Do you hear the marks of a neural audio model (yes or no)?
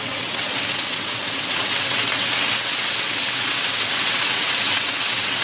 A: yes